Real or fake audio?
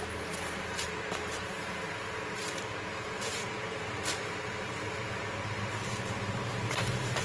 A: fake